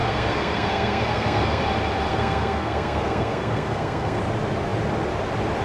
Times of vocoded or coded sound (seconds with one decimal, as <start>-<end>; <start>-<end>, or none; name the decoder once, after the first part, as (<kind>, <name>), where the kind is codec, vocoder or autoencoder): 0.0-1.6 (codec, SNAC); 2.1-4.2